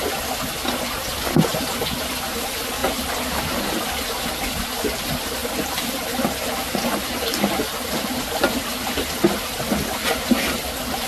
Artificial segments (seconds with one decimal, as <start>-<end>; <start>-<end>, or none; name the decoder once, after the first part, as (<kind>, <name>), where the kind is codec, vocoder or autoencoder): 1.5-2.1 (vocoder, BigVGAN v2); 5.4-9.8

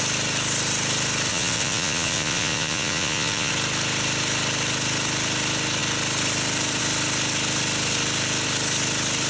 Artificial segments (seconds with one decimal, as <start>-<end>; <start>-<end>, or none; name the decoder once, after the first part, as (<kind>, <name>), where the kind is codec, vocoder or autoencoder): 1.3-3.5 (vocoder, Vocos)

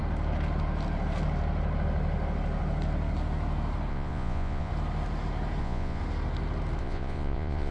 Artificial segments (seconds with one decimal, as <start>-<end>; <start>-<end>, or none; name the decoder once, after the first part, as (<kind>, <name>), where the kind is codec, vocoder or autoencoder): 3.9-4.7 (vocoder, Vocos); 5.6-6.0; 6.8-7.7

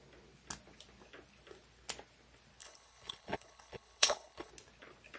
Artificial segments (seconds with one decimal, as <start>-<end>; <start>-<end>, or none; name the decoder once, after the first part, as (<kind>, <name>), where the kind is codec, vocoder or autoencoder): 2.6-4.5 (codec, HILCodec)